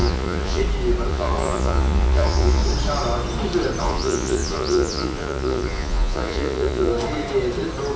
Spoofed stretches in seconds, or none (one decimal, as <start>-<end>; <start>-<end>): 0.0-0.6; 1.1-2.6; 3.8-6.9